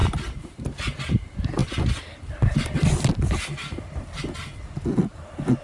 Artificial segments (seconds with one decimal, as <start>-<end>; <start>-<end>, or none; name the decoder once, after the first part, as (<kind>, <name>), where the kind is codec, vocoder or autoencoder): none